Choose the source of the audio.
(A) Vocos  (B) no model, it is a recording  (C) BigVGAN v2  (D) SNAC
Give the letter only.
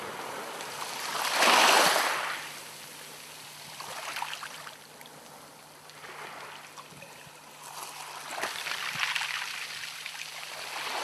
B